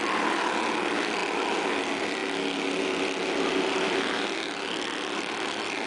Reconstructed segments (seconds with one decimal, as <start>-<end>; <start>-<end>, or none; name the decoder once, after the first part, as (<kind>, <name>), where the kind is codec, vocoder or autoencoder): none